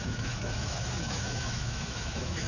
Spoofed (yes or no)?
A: yes